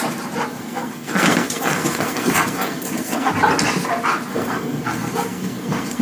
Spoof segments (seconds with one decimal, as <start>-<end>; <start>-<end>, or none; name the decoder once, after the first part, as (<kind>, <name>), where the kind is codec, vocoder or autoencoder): 0.5-3.3 (codec, SNAC); 4.3-6.0